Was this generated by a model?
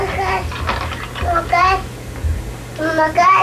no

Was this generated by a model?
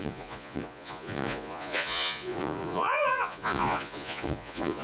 yes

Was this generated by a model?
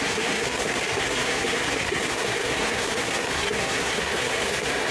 yes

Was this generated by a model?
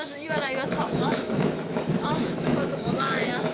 yes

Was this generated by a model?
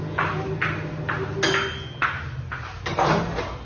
no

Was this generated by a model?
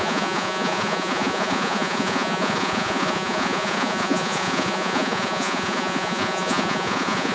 yes